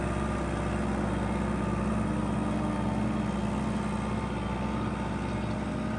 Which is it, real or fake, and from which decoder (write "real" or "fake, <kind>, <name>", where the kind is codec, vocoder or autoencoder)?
real